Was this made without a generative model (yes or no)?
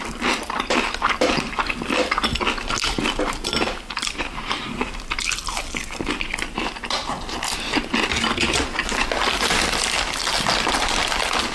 yes